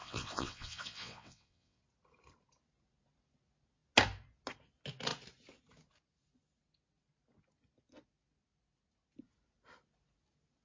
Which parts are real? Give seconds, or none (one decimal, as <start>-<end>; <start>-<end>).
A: 1.8-10.6